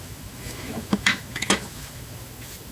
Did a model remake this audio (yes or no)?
yes